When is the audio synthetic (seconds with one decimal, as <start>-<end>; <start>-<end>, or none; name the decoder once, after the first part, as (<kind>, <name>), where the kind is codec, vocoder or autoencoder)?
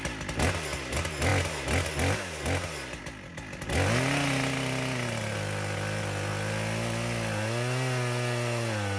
none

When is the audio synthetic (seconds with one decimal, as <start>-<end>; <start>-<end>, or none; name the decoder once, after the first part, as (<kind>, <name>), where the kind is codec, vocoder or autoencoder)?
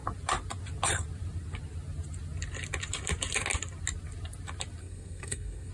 4.8-5.7 (codec, SNAC)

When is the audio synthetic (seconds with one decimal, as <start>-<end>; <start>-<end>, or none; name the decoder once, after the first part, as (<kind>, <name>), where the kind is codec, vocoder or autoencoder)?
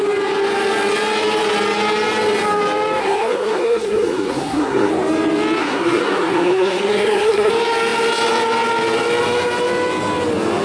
3.0-4.9 (codec, SNAC); 5.6-7.5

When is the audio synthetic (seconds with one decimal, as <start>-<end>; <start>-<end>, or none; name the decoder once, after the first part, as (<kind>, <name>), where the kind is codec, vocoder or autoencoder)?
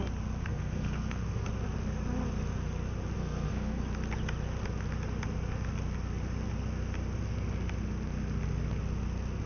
0.4-1.5 (codec, SNAC); 3.2-3.8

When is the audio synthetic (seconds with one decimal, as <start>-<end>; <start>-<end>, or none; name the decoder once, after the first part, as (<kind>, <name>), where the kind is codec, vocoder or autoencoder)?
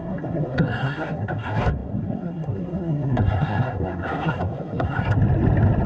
0.0-5.0 (codec, SNAC)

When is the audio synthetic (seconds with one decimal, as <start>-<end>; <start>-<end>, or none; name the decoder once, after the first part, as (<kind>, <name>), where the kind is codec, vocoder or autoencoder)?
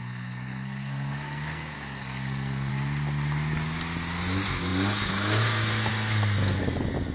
0.0-2.7 (codec, SNAC)